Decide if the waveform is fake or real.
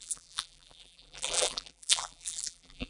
fake